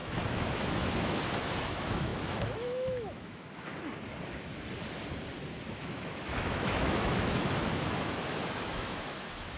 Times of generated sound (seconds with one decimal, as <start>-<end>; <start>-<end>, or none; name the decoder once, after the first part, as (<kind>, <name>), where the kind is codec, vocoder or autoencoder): 0.0-3.7 (autoencoder, DAC-VAE); 5.7-9.6